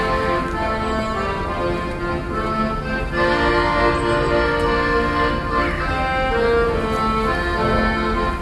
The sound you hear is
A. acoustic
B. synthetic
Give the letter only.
A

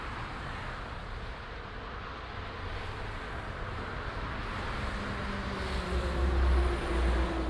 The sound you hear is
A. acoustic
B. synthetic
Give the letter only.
A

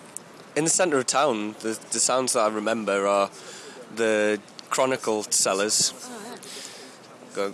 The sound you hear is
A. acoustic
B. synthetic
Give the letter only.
A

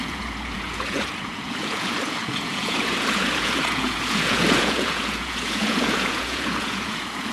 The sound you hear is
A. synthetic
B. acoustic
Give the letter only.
A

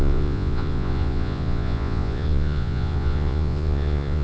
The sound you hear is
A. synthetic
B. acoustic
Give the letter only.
A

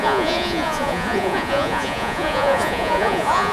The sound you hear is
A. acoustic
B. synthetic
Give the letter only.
B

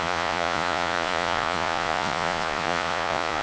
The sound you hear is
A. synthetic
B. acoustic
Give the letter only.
A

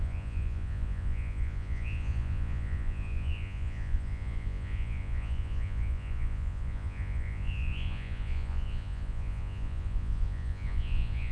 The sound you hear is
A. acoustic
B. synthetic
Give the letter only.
B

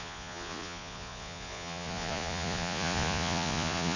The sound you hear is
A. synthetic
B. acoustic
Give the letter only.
A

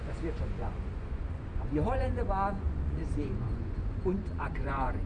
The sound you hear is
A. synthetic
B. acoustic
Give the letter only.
A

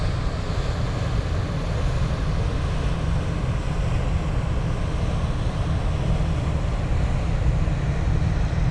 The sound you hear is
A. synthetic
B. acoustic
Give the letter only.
B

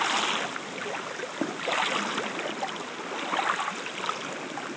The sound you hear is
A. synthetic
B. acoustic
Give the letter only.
B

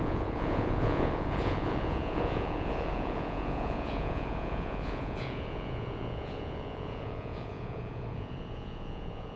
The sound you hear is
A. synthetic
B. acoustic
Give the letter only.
A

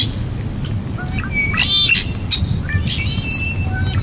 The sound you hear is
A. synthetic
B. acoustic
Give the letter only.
B